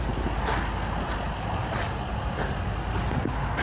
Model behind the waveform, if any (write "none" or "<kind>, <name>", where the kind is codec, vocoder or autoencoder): none